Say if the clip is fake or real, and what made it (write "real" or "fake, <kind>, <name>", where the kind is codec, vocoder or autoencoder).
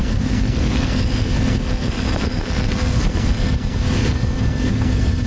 fake, codec, SNAC